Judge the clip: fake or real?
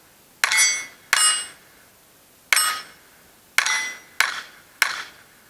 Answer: real